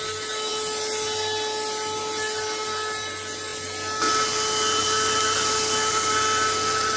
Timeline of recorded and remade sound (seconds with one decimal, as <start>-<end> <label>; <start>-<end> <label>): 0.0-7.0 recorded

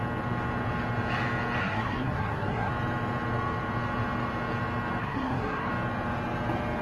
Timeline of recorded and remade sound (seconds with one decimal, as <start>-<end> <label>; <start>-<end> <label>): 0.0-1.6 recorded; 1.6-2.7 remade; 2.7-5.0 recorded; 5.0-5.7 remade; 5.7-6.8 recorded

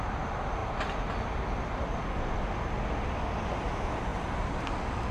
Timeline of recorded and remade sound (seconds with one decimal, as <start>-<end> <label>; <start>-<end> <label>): 0.0-5.1 recorded

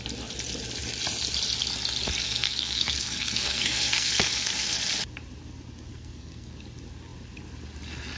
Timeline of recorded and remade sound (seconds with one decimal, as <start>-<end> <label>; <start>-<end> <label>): 0.0-2.2 recorded; 2.2-4.8 remade; 4.8-5.9 recorded; 5.9-6.5 remade; 6.5-8.2 recorded

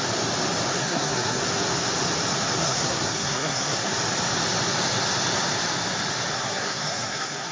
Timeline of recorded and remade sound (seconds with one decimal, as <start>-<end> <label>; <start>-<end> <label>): 0.0-0.8 recorded; 0.8-1.4 remade; 1.4-2.6 recorded; 2.6-3.9 remade; 3.9-6.3 recorded; 6.3-7.5 remade

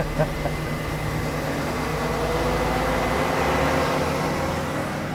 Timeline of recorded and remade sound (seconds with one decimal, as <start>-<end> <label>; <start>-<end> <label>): 0.0-5.1 recorded

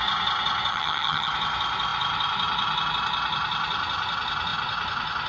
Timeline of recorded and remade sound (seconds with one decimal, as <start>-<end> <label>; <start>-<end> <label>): 0.0-0.7 recorded; 0.7-1.3 remade; 1.3-5.3 recorded